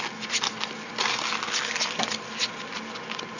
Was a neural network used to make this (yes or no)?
no